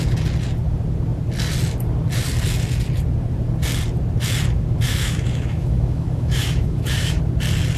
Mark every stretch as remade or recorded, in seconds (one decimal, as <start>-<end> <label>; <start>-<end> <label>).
0.0-4.9 recorded; 4.9-7.2 remade; 7.2-7.8 recorded

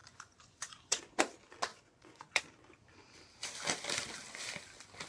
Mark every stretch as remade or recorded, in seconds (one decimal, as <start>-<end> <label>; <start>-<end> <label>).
0.0-1.2 remade; 1.2-1.7 recorded; 1.7-2.4 remade; 2.4-5.1 recorded

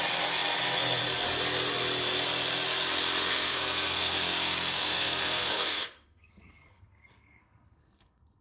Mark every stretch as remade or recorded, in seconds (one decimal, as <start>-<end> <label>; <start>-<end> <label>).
0.0-3.3 recorded; 3.3-8.4 remade

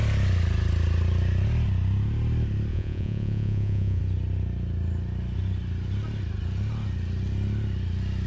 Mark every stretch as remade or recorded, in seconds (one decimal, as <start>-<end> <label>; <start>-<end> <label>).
0.0-2.7 recorded; 2.7-4.0 remade; 4.0-8.3 recorded

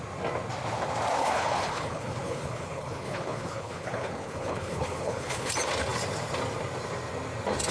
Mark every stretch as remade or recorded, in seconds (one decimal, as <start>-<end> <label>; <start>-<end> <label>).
0.0-1.2 recorded; 1.2-5.5 remade; 5.5-7.7 recorded

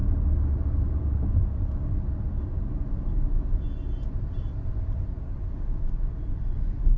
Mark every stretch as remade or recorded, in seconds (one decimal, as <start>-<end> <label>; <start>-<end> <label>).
0.0-4.2 recorded; 4.2-5.3 remade; 5.3-6.3 recorded; 6.3-7.0 remade

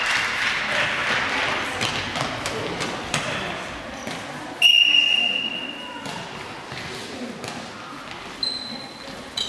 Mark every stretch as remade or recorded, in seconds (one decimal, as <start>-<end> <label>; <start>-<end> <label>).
0.0-9.5 recorded

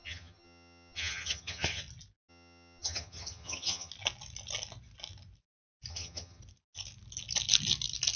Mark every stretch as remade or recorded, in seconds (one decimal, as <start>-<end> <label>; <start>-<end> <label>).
0.0-1.8 remade; 1.8-2.3 recorded; 2.3-3.9 remade; 3.9-5.9 recorded; 5.9-6.4 remade; 6.4-8.2 recorded